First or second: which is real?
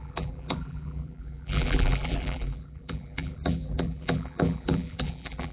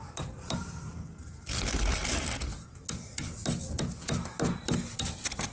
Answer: second